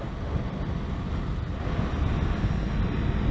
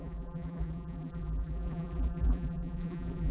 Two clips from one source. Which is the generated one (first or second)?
second